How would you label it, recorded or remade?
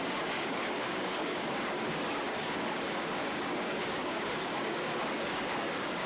remade